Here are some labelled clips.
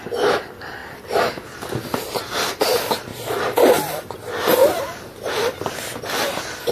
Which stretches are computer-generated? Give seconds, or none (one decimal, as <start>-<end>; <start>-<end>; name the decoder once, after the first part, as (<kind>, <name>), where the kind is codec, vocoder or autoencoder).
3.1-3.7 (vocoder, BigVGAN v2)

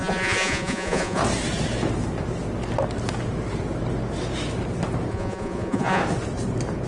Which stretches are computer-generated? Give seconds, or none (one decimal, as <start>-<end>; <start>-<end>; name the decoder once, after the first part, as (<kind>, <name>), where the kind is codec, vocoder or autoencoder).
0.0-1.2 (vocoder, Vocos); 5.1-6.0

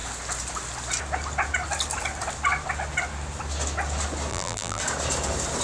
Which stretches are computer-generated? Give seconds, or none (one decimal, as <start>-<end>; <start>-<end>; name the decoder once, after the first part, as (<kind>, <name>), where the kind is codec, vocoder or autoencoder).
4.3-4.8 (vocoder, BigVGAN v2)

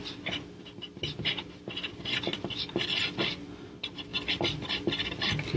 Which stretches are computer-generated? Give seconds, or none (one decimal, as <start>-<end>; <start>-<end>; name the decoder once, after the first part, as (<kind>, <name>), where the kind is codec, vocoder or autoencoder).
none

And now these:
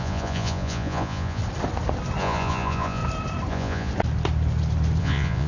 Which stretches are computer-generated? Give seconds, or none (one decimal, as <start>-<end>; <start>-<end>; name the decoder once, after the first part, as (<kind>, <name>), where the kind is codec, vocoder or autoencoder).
0.0-1.4 (vocoder, Vocos); 2.2-3.0; 3.5-3.9; 5.0-5.5

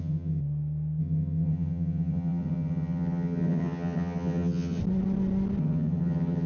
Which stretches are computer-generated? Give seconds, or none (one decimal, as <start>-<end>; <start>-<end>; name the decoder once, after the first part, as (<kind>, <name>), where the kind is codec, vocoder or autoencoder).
0.0-0.4 (vocoder, HiFi-GAN); 1.0-4.8; 5.6-6.5